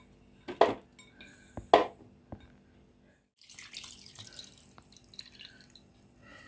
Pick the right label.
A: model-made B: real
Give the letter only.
B